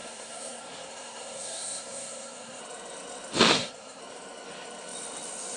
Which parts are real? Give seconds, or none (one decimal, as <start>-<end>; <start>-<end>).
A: 2.6-3.5; 4.0-5.6

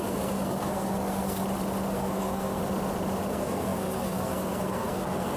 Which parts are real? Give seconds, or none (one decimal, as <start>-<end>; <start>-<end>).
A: 1.4-1.9; 2.6-3.3

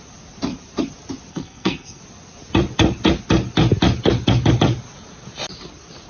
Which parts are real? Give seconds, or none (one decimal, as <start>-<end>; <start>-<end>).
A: 0.0-1.3; 2.0-6.1

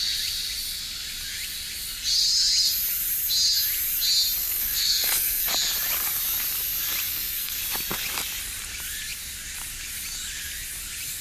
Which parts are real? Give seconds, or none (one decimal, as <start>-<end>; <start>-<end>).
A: 0.0-4.4; 5.4-7.1; 7.6-11.2

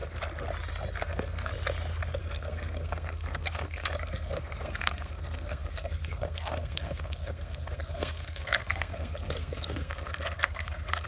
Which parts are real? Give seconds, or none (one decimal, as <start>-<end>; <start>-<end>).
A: 0.0-1.0; 1.5-2.2

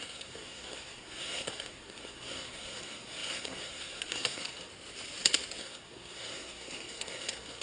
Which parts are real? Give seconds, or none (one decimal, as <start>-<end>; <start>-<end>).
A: 4.7-5.6

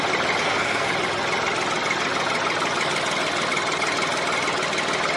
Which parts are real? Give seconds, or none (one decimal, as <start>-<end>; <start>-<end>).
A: 0.0-0.4; 0.9-5.2